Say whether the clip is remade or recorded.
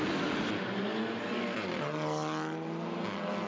recorded